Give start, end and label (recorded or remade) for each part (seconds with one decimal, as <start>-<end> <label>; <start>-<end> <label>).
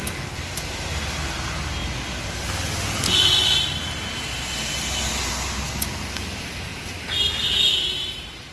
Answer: 0.0-8.5 recorded